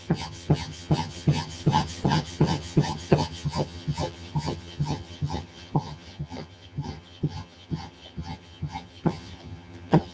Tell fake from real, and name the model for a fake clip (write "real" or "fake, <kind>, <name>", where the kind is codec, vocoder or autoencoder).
fake, vocoder, HiFi-GAN